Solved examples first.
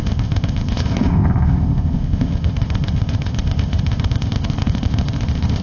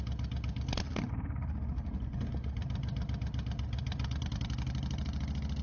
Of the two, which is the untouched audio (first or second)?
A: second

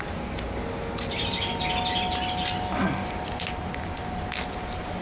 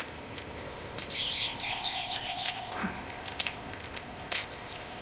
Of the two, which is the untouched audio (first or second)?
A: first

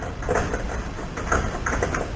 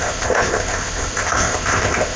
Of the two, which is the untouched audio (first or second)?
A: first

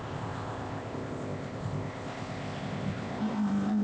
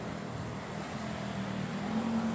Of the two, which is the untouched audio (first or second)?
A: second